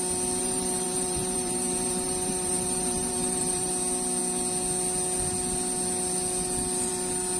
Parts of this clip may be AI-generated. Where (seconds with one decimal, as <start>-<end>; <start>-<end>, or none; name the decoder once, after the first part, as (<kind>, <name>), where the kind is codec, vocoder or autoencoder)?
0.4-3.7 (vocoder, BigVGAN v2)